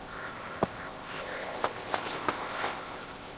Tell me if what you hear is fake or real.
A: fake